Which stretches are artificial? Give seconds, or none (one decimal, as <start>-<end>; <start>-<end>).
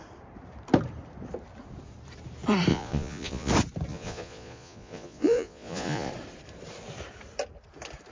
2.7-3.5; 3.9-6.1